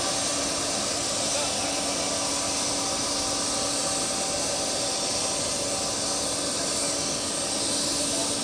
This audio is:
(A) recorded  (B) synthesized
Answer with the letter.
A